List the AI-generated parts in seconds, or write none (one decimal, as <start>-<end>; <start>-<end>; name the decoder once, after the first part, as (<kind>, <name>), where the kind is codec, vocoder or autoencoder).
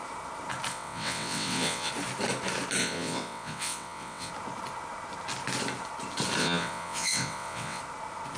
0.7-1.9 (vocoder, WaveNeXt); 2.8-4.3; 6.4-7.8